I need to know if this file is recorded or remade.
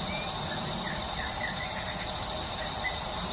remade